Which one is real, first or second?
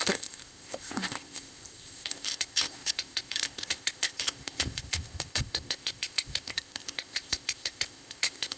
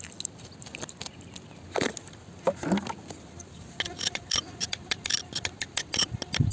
second